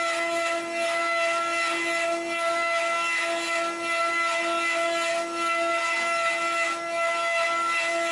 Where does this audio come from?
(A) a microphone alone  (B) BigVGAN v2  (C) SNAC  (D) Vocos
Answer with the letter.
A